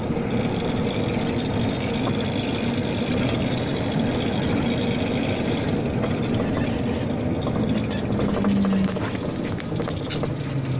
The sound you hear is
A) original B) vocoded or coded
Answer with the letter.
A